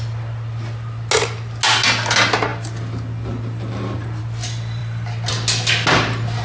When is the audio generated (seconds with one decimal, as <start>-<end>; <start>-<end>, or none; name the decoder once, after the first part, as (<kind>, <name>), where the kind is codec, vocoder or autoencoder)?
none